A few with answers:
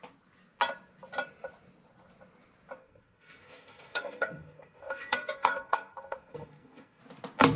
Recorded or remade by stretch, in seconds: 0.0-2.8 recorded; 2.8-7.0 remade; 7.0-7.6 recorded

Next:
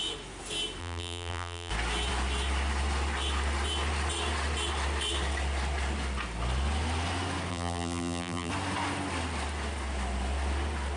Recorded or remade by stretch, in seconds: 0.0-0.8 recorded; 0.8-1.7 remade; 1.7-7.5 recorded; 7.5-8.5 remade; 8.5-11.0 recorded